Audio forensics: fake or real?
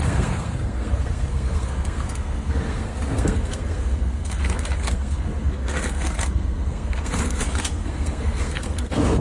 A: fake